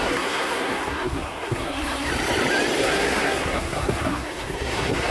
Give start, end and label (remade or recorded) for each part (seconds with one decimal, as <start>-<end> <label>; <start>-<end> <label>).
0.0-2.1 remade; 2.1-2.8 recorded; 2.8-5.1 remade